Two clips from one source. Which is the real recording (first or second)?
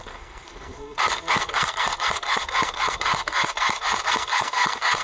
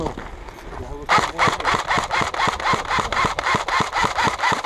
second